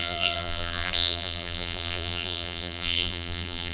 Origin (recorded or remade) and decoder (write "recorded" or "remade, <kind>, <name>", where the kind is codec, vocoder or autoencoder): remade, vocoder, BigVGAN v2